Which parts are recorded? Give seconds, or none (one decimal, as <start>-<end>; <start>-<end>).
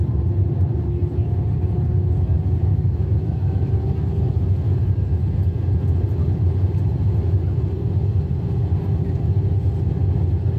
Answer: 0.0-2.6; 3.7-10.6